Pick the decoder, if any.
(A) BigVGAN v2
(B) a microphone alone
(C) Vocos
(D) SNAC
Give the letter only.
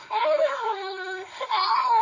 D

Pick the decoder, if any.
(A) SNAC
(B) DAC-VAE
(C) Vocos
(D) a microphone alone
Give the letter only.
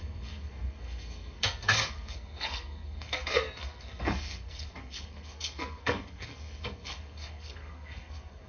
A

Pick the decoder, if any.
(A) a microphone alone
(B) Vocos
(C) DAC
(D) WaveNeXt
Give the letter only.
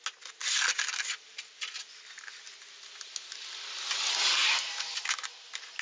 A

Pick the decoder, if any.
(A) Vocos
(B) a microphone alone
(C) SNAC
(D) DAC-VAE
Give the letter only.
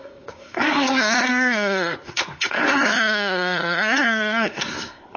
C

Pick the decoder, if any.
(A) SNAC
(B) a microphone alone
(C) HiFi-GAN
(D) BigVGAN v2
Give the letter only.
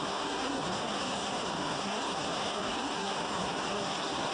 A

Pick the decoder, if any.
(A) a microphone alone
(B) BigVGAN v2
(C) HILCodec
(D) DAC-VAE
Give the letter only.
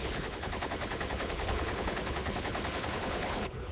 C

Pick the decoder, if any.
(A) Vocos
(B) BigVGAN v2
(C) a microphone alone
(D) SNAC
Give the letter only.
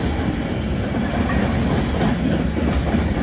C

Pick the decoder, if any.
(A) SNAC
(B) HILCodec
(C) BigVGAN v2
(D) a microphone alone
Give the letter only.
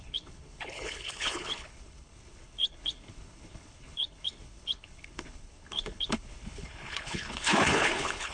B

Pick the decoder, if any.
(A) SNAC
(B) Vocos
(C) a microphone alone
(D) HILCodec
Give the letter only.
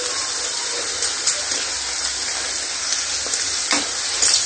C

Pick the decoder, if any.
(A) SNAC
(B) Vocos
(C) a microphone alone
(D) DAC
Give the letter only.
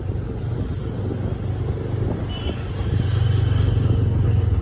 C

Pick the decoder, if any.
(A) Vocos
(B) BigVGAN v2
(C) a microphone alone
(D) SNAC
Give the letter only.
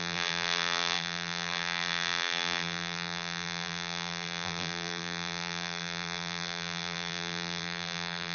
B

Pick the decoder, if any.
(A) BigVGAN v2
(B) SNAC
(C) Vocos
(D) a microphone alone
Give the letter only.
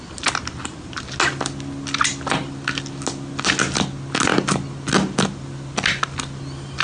D